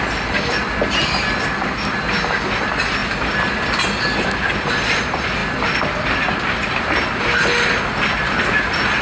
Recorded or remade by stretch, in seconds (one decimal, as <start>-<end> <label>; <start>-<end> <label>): 0.0-9.0 recorded